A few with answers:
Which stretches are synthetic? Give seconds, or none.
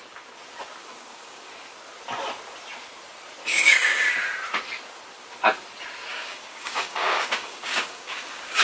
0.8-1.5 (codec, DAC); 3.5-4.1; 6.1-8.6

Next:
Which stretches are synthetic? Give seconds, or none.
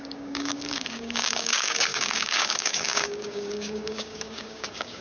0.0-5.0 (codec, DAC)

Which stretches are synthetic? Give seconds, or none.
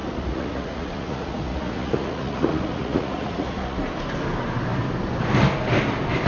0.0-3.8 (vocoder, Vocos)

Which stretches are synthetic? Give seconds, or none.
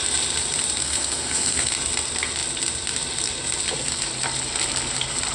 0.8-1.7 (codec, SNAC)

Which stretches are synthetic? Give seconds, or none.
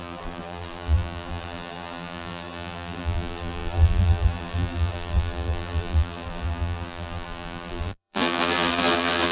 0.0-9.3 (vocoder, BigVGAN v2)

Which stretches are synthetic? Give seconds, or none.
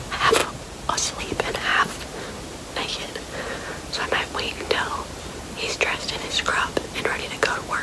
0.0-0.4 (vocoder, BigVGAN v2); 1.2-1.7; 6.0-6.5